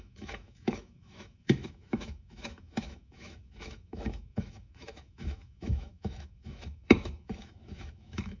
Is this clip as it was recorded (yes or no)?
no